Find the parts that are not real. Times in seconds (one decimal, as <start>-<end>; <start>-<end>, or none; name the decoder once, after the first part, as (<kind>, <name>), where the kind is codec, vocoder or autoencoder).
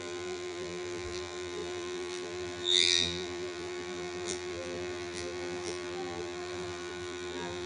0.0-7.7 (vocoder, BigVGAN v2)